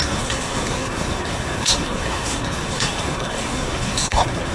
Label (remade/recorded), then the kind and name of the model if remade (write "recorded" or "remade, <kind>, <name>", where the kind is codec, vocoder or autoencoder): remade, codec, SNAC